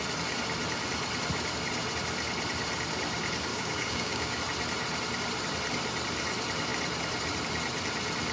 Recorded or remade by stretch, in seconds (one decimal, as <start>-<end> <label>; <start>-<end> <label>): 0.0-3.5 recorded; 3.5-4.4 remade; 4.4-8.3 recorded